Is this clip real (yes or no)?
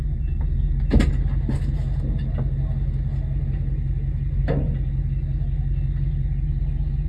yes